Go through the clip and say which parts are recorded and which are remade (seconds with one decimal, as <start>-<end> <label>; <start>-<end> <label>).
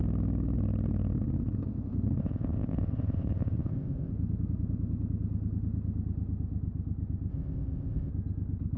0.0-2.2 recorded; 2.2-4.1 remade; 4.1-7.3 recorded; 7.3-8.1 remade; 8.1-8.8 recorded